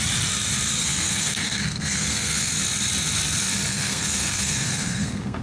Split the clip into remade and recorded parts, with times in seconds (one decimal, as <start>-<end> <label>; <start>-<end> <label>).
0.0-0.8 recorded; 0.8-2.5 remade; 2.5-3.7 recorded; 3.7-5.4 remade